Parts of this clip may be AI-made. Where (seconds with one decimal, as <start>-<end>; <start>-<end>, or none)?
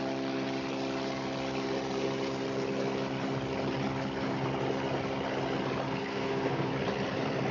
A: 6.1-6.7